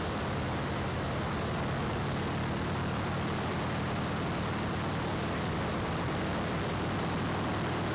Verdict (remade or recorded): recorded